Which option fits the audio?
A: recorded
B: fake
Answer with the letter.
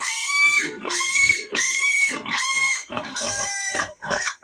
B